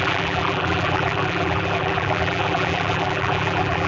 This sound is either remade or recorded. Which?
remade